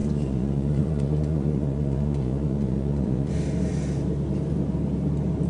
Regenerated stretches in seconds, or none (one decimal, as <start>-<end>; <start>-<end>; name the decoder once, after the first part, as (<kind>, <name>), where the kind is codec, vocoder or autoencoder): 0.0-3.3 (vocoder, Vocos)